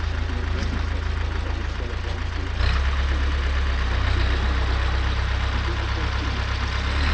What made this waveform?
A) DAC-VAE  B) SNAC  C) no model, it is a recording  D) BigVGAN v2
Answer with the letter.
C